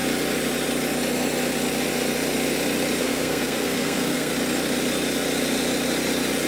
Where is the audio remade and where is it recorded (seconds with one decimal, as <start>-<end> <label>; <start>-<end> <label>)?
0.0-3.0 recorded; 3.0-4.3 remade; 4.3-6.5 recorded